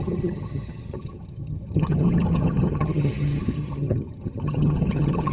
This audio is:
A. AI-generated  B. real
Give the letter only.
A